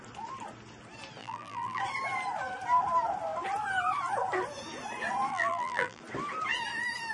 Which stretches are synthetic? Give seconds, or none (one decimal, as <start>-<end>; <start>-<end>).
1.2-1.8; 5.3-6.0